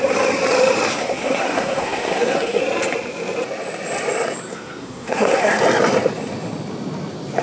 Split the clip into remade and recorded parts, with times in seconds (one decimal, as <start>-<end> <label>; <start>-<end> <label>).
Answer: 0.0-0.9 recorded; 0.9-2.6 remade; 2.6-4.5 recorded; 4.5-5.6 remade; 5.6-7.4 recorded